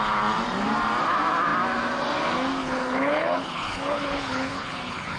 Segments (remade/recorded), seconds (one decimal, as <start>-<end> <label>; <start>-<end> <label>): 0.0-2.6 recorded; 2.6-5.2 remade

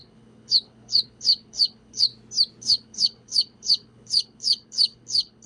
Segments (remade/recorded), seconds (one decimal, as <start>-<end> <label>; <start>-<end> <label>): 0.0-2.1 remade; 2.1-2.6 recorded; 2.6-5.5 remade

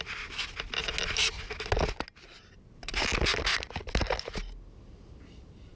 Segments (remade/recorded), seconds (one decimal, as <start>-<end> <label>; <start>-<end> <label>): 0.0-5.8 recorded

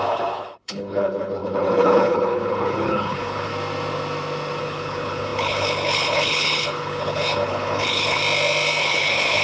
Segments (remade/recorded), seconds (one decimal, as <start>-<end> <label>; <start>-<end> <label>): 0.0-3.5 remade; 3.5-4.6 recorded; 4.6-8.2 remade; 8.2-8.8 recorded; 8.8-9.4 remade

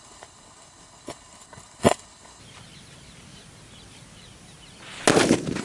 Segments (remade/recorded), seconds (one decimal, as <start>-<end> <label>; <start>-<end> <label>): 0.0-2.4 remade; 2.4-5.6 recorded